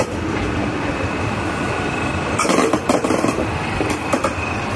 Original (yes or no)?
yes